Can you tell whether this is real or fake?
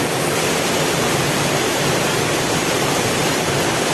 real